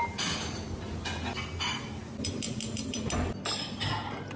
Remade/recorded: recorded